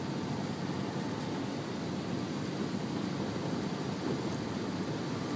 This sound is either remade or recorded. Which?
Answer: recorded